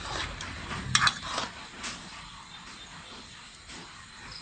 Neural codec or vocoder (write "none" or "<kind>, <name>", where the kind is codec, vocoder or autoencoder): none